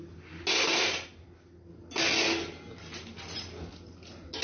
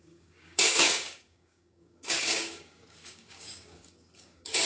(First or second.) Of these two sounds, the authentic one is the first